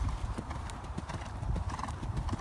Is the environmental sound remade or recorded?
remade